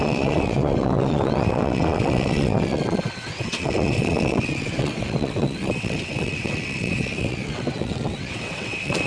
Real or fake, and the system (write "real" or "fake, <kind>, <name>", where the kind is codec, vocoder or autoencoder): fake, vocoder, WaveNeXt